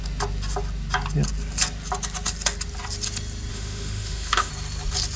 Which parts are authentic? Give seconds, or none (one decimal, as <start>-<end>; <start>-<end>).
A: 0.0-3.5; 4.5-5.2